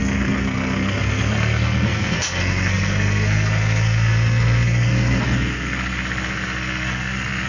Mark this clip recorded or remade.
remade